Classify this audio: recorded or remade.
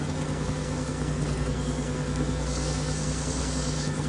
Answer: remade